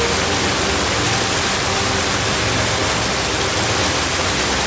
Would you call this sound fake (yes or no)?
no